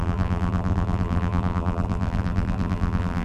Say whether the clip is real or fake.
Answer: fake